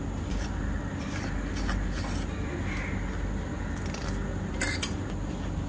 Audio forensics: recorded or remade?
recorded